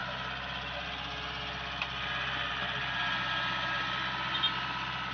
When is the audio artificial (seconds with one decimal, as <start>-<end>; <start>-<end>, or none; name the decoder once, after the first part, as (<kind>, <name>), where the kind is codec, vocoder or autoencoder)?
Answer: none